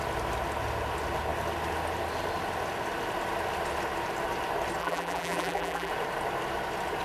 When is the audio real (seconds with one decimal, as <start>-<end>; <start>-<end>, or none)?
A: 0.0-4.8; 5.9-7.0